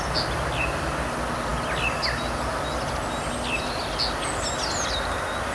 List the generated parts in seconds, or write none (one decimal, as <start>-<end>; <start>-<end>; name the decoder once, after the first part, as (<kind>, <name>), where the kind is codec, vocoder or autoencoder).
none